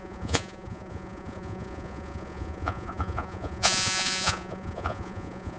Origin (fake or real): fake